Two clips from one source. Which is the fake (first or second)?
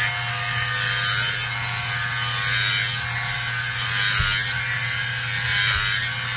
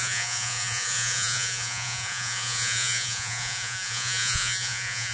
second